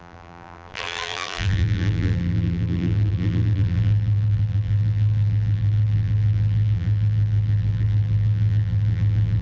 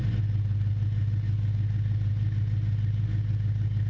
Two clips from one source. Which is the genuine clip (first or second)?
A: second